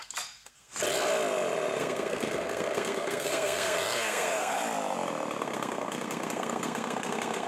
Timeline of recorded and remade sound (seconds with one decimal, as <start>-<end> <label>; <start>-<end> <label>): 0.0-0.7 remade; 0.7-1.8 recorded; 1.8-4.6 remade; 4.6-5.4 recorded; 5.4-7.5 remade